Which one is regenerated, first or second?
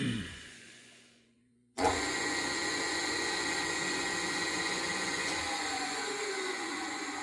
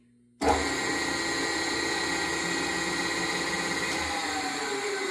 first